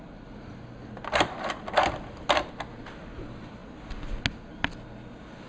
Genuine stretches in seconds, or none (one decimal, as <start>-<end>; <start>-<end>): 0.0-5.5